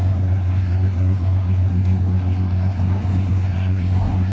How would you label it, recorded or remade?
remade